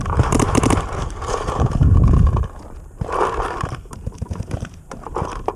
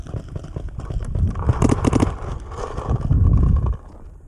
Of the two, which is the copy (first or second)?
first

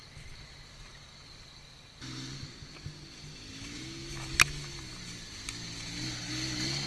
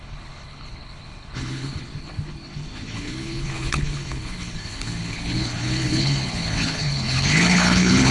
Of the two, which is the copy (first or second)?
second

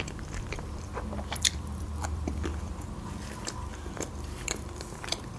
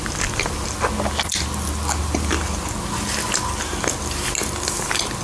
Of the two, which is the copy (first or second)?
first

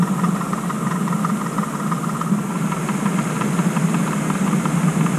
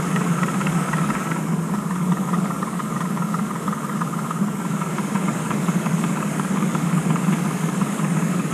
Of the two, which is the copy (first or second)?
second